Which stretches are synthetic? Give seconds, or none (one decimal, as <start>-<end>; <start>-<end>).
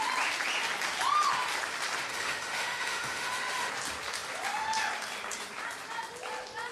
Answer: 2.1-3.7